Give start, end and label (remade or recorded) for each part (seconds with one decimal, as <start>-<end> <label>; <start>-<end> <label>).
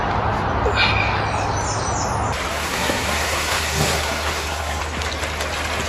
0.0-2.5 recorded; 2.5-4.8 remade; 4.8-5.9 recorded